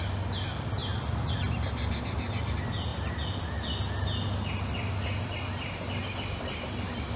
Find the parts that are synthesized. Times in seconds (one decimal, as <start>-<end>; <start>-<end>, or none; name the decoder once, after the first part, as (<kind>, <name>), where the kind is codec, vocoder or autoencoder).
none

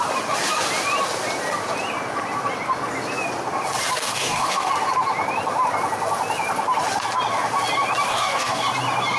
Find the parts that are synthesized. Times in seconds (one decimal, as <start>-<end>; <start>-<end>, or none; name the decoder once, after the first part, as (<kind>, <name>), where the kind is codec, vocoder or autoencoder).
4.0-4.7 (codec, DAC); 8.1-8.6